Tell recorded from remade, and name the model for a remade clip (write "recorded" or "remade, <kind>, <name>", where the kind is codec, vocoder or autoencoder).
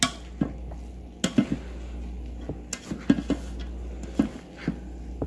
recorded